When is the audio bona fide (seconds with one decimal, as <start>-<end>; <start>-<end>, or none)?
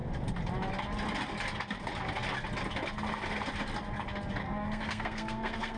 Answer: 0.0-4.4